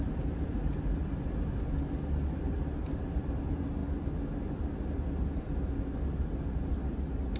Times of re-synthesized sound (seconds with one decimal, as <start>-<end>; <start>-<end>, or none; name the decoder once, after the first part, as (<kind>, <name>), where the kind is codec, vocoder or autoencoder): none